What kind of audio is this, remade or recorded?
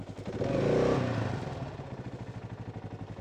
recorded